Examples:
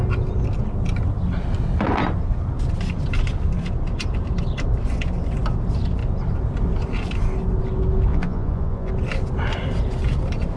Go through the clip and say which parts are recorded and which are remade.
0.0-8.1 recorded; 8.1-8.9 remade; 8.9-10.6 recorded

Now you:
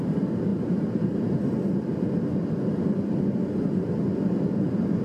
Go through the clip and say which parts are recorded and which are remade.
0.0-0.5 recorded; 0.5-1.5 remade; 1.5-5.0 recorded

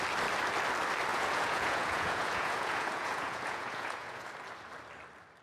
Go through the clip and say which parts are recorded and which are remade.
0.0-1.1 recorded; 1.1-4.3 remade; 4.3-5.4 recorded

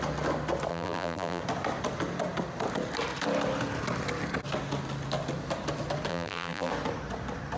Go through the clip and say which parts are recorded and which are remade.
0.0-0.7 recorded; 0.7-1.4 remade; 1.4-6.1 recorded; 6.1-6.7 remade; 6.7-7.6 recorded

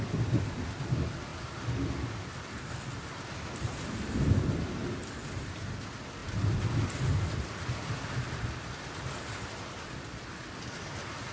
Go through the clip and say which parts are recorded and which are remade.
0.0-6.2 recorded; 6.2-8.4 remade; 8.4-11.3 recorded

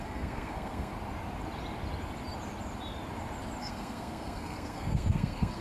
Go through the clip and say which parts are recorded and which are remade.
0.0-0.9 remade; 0.9-3.6 recorded; 3.6-5.6 remade

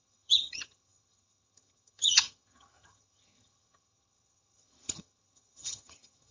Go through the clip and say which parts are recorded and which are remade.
0.0-6.3 remade